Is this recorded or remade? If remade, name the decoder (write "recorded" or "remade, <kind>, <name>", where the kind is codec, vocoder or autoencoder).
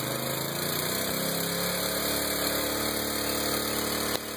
recorded